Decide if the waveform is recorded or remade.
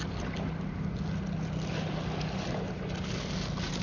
recorded